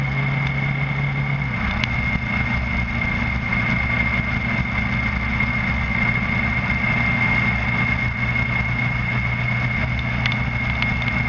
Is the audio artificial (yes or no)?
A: no